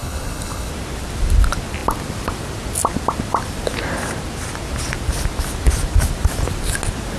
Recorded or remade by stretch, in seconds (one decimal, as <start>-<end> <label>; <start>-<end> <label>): 0.0-0.7 remade; 0.7-7.2 recorded